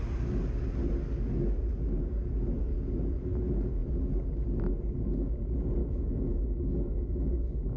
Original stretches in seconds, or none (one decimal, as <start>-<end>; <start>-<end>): 0.0-5.8